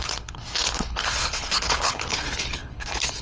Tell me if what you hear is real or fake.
fake